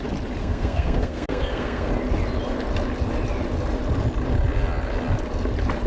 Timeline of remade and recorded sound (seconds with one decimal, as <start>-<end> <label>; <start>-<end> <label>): 0.0-0.4 recorded; 0.4-1.9 remade; 1.9-5.9 recorded